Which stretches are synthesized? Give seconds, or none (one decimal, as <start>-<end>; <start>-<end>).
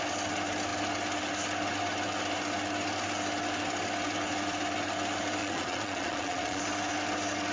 5.4-6.6